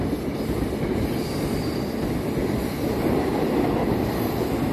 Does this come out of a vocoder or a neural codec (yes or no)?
no